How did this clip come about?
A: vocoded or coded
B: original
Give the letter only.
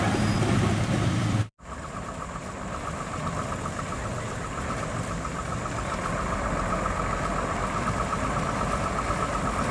A